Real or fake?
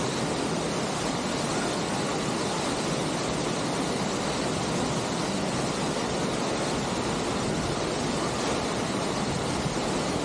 real